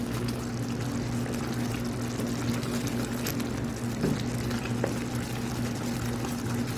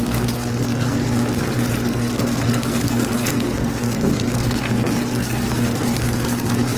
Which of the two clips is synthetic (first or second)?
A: second